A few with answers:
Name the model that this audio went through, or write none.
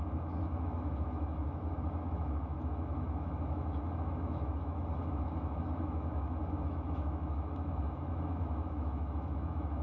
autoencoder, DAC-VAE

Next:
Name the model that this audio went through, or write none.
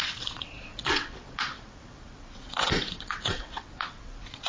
vocoder, WaveNeXt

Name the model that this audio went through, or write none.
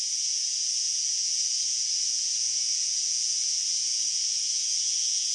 vocoder, Vocos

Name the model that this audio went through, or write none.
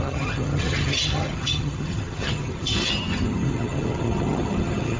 vocoder, HiFi-GAN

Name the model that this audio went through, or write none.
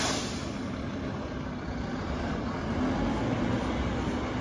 none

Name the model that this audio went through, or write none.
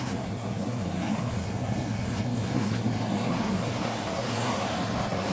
codec, SNAC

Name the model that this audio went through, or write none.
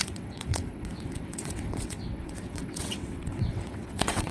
vocoder, WaveNeXt